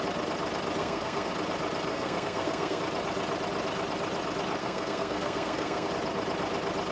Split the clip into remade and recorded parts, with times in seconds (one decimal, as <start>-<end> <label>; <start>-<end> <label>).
0.0-0.8 recorded; 0.8-1.3 remade; 1.3-1.9 recorded; 1.9-2.8 remade; 2.8-4.6 recorded; 4.6-5.9 remade; 5.9-6.9 recorded